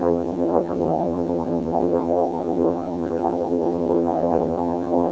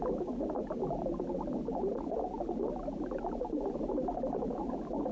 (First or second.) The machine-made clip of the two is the first